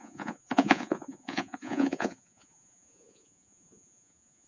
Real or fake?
fake